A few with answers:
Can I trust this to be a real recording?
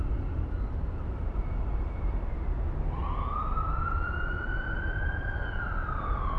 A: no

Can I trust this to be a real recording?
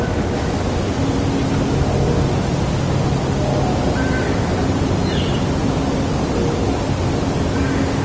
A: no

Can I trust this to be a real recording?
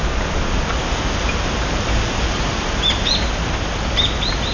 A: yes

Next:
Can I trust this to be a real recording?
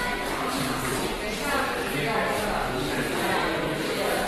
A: yes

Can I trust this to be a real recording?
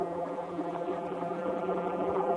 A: no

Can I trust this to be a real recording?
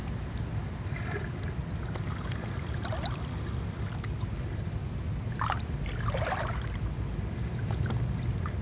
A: yes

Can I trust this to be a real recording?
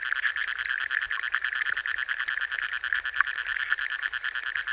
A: yes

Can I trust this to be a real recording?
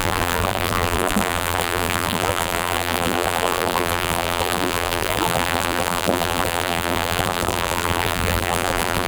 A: no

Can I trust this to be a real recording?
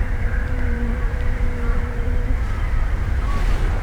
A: no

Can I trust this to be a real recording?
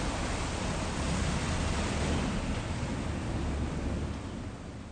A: yes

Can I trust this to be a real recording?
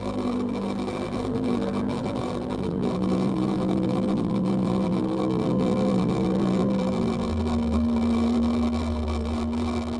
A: no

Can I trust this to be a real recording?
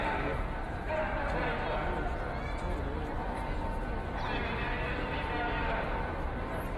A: yes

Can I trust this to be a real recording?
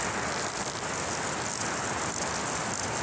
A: yes